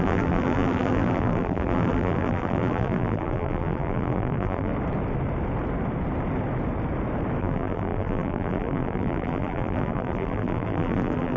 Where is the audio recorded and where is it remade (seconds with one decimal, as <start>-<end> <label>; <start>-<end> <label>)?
0.0-4.7 remade; 4.7-7.4 recorded; 7.4-11.4 remade